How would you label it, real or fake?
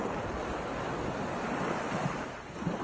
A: real